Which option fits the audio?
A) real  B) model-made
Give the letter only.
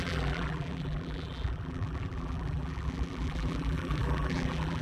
B